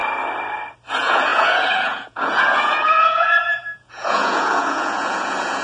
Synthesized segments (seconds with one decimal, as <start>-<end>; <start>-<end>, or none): 0.9-5.6